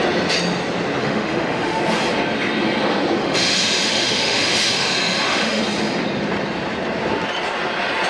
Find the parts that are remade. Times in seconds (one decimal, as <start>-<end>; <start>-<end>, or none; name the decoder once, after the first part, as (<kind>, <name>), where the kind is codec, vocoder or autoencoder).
1.0-1.8 (autoencoder, DAC-VAE); 3.2-5.6